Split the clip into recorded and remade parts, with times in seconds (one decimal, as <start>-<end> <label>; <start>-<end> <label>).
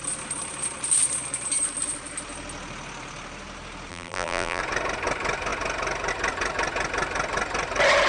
0.0-3.9 recorded; 3.9-4.6 remade; 4.6-8.1 recorded